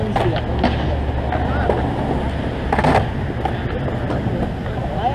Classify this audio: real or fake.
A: real